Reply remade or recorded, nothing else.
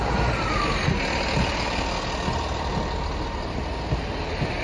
recorded